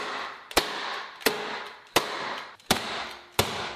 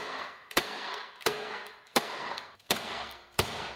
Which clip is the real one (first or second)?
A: first